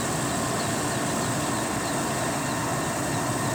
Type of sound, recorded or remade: recorded